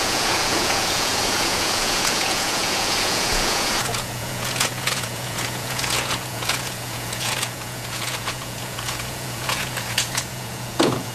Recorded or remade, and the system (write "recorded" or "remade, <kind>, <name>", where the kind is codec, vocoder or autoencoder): remade, vocoder, Vocos